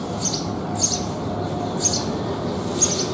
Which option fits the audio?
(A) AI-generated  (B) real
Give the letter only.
B